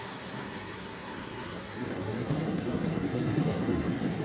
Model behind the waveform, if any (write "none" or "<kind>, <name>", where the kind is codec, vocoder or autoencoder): codec, SNAC